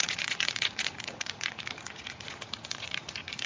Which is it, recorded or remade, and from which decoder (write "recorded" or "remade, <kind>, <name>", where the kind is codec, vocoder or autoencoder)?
remade, vocoder, Vocos